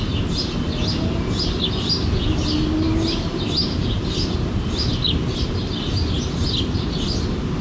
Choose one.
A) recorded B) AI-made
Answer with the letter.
A